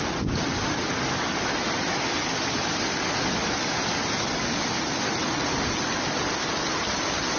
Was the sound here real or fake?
real